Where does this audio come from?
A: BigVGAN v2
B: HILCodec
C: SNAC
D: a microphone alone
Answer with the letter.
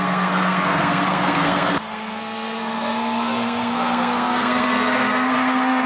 C